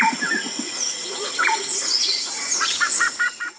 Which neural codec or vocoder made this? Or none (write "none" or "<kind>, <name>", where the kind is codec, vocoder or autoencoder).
vocoder, Vocos